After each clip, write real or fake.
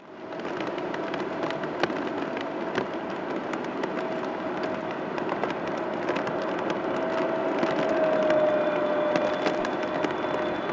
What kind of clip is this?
real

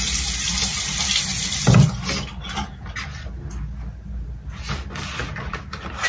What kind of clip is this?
real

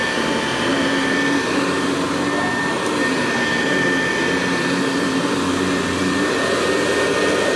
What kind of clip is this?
real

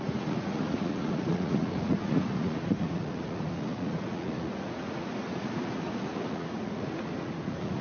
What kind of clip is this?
fake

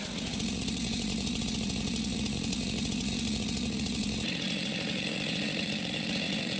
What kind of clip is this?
fake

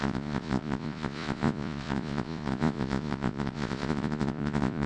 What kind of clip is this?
fake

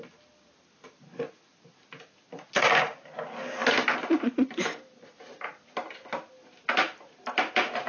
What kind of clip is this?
real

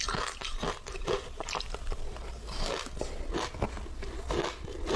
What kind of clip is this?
real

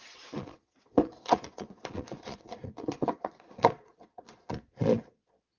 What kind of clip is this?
fake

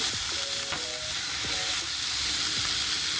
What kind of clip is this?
real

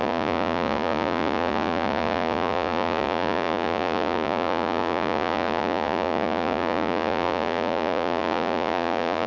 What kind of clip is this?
fake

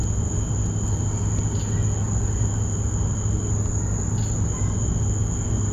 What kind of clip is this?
real